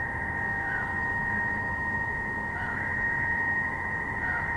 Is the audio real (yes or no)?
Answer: no